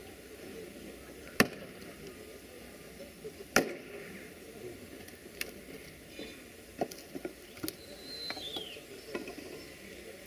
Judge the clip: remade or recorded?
recorded